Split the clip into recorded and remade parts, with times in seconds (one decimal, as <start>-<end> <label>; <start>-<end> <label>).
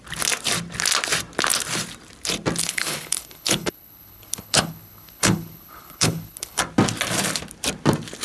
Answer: 0.0-2.6 recorded; 2.6-6.6 remade; 6.6-8.2 recorded